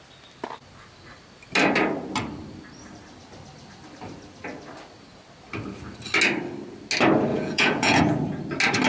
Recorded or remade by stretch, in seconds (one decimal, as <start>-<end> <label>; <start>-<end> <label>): 0.0-7.3 recorded; 7.3-8.0 remade; 8.0-8.9 recorded